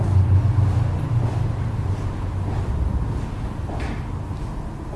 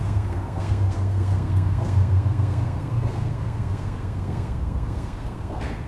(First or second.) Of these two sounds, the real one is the first